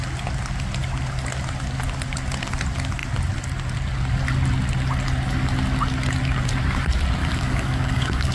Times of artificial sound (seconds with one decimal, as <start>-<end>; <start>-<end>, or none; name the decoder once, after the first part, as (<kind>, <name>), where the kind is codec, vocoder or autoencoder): 7.2-8.3 (codec, DAC)

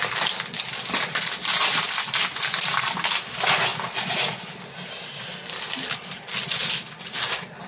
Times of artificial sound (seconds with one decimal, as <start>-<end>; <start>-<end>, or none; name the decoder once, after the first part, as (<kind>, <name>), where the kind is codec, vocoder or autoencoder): none

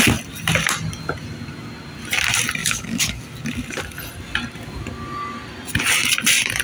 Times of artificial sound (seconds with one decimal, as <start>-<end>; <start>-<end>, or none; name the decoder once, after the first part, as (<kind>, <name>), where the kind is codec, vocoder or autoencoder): 2.6-3.2 (codec, DAC)

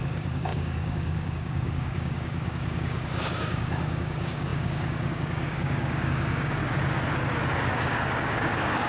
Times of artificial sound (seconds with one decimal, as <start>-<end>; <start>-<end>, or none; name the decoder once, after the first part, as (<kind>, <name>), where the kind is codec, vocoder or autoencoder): 0.0-6.6 (codec, DAC); 7.7-8.9

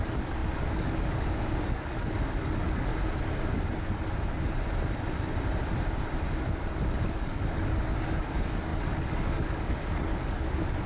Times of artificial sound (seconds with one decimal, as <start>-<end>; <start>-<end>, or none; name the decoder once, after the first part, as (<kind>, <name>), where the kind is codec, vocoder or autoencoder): 0.0-2.9 (codec, DAC); 6.4-10.9

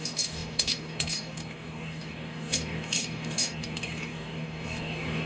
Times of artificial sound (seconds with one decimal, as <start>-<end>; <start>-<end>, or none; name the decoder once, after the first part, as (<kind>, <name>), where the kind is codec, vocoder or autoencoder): 0.0-5.3 (codec, DAC)

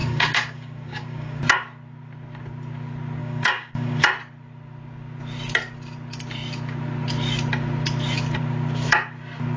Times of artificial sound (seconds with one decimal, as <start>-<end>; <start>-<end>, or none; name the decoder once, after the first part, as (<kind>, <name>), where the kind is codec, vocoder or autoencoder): 0.0-1.4 (codec, DAC); 3.2-4.0